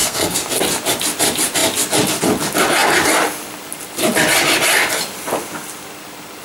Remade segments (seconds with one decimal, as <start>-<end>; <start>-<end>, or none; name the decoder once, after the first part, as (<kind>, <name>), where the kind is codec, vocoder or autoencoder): 0.0-0.6 (codec, SNAC)

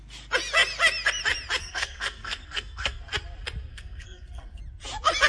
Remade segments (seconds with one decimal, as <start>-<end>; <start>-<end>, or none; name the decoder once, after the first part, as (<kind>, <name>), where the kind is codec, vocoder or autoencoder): 1.6-3.0 (codec, SNAC); 3.7-4.6

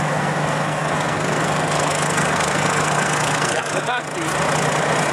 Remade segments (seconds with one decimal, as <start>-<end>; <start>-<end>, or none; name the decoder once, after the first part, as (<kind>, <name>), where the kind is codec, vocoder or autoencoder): 0.0-4.1 (codec, SNAC)

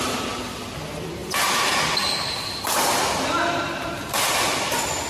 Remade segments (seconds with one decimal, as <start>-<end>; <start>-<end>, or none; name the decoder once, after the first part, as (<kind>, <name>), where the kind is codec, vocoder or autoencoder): none

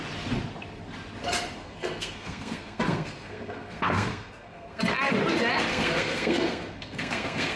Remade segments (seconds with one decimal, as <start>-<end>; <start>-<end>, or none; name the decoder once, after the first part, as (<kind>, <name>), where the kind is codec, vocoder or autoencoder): 1.6-4.8 (codec, SNAC); 5.7-7.6

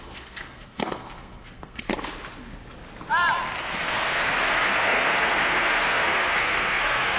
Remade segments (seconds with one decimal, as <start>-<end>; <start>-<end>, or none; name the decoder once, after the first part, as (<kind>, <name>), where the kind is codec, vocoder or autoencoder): 0.0-1.9 (codec, SNAC); 3.6-4.2; 4.7-7.2

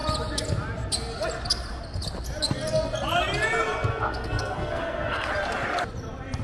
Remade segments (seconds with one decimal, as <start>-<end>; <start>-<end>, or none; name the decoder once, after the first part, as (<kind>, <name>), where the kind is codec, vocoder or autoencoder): 3.9-5.3 (codec, SNAC)

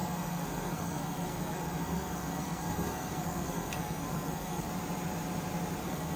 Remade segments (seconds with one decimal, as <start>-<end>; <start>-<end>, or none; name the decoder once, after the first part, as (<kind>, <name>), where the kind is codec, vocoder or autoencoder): 0.0-4.7 (codec, SNAC); 5.8-6.2